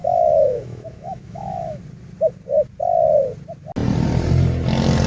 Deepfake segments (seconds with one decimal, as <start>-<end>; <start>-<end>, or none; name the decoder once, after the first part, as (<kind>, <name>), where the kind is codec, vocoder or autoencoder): 0.0-1.8 (autoencoder, DAC-VAE)